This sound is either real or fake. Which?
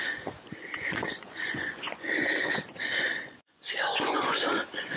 fake